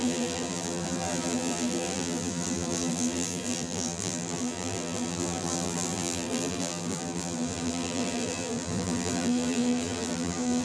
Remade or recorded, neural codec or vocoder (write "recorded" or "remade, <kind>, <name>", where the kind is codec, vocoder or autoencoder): remade, vocoder, BigVGAN v2